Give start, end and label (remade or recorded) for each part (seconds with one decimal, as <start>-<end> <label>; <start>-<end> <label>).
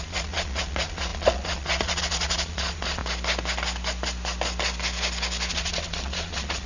0.0-3.0 remade; 3.0-5.5 recorded; 5.5-6.7 remade